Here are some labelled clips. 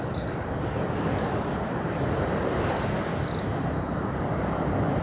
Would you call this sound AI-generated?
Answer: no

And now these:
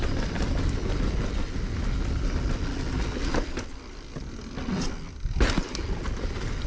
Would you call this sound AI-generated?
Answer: no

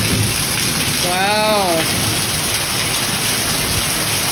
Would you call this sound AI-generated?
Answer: no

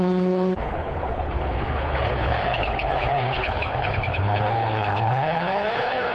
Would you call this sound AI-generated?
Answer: yes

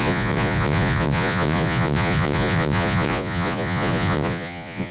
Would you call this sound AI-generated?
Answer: yes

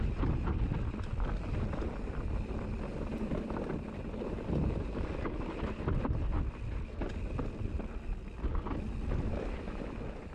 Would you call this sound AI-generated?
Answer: yes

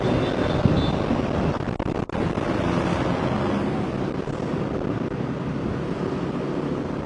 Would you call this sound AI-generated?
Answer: no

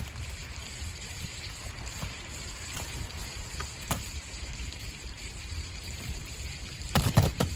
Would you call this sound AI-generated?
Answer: yes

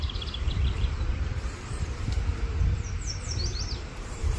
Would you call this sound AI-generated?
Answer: yes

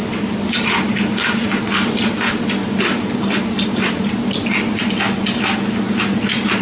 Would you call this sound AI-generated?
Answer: no